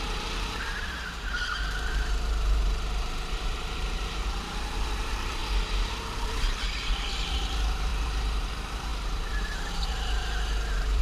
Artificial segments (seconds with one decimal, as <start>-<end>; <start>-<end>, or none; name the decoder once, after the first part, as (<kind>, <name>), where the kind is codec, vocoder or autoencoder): 0.0-5.4 (vocoder, BigVGAN v2); 5.9-11.0